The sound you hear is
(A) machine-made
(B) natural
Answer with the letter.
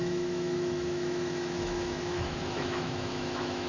A